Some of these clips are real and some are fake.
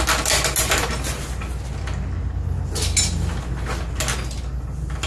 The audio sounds real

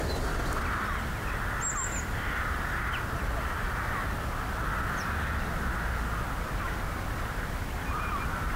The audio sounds real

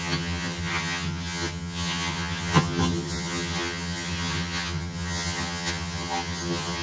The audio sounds fake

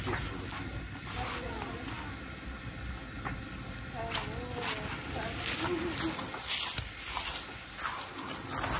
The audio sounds real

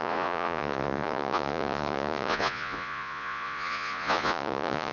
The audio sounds fake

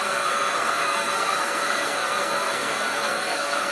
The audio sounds fake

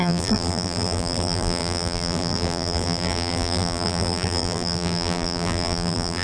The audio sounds fake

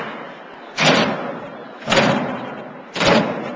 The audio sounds real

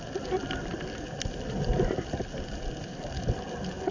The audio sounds real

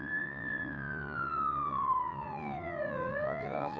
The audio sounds fake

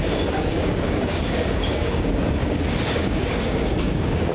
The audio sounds fake